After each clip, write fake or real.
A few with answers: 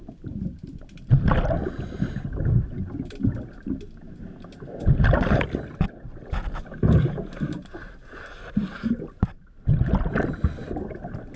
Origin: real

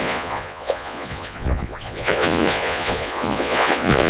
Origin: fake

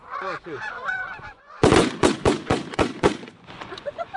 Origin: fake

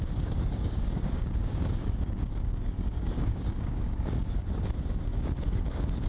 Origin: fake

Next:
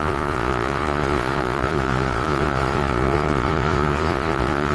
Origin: fake